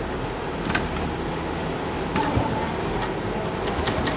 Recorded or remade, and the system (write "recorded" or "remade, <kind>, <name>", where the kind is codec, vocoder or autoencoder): recorded